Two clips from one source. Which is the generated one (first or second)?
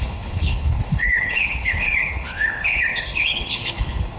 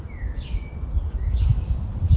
first